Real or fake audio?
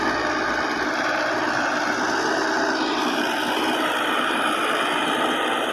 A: real